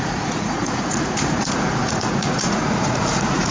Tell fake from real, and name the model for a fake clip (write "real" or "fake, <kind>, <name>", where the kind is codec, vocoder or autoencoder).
fake, vocoder, Vocos